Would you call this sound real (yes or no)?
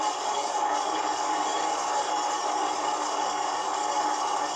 no